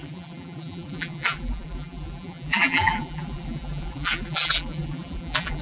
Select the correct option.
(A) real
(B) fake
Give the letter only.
B